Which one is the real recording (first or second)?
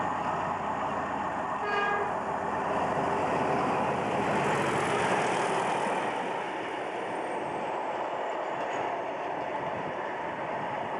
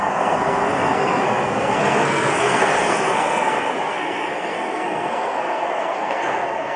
first